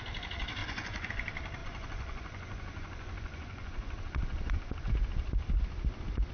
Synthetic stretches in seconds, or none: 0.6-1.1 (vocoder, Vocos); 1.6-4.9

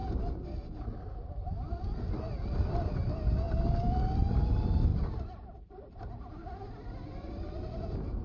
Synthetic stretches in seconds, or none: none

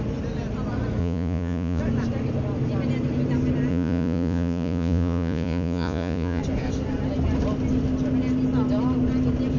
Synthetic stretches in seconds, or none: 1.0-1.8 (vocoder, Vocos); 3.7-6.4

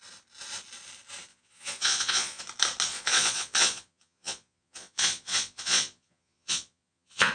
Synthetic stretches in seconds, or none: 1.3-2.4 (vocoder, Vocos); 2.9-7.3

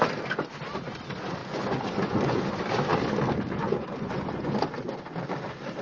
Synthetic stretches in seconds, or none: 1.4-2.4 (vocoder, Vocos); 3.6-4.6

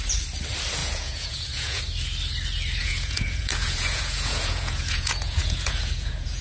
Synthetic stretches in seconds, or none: 0.8-1.8 (vocoder, Vocos); 2.8-6.4

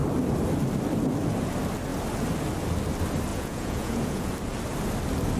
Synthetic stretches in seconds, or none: 3.3-4.3 (vocoder, Vocos)

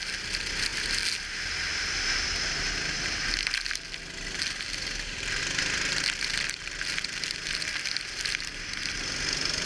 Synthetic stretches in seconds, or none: none